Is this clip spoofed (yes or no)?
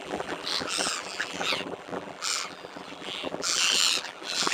yes